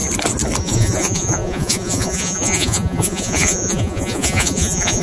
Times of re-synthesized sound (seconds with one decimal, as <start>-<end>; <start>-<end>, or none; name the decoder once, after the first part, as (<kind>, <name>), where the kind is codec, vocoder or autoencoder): 0.6-5.0 (vocoder, Vocos)